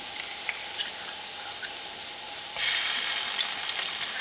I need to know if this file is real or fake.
real